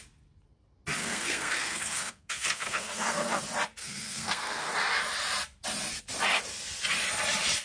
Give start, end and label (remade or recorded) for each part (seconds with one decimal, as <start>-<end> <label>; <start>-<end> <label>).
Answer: 0.0-1.0 recorded; 1.0-3.4 remade; 3.4-3.8 recorded; 3.8-4.7 remade; 4.7-7.6 recorded